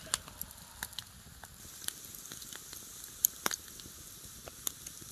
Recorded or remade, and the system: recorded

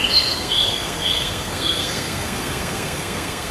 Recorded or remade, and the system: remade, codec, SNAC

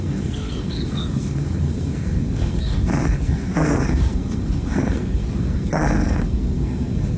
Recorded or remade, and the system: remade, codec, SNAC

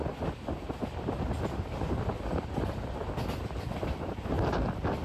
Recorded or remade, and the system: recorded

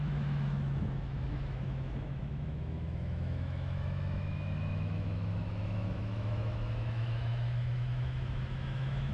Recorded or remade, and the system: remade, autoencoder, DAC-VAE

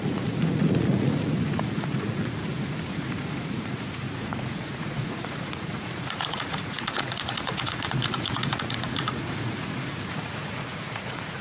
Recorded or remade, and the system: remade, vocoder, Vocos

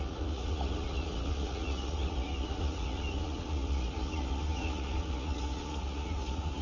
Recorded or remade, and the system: remade, vocoder, Vocos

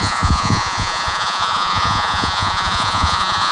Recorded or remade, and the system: remade, vocoder, Vocos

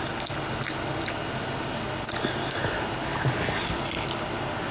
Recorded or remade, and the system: recorded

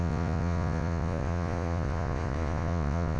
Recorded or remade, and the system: remade, vocoder, Vocos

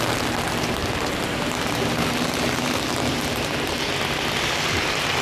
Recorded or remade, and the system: recorded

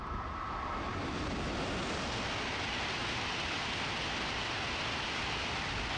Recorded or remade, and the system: recorded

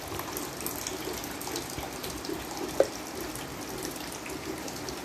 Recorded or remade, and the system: recorded